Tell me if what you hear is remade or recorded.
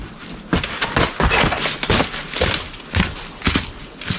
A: recorded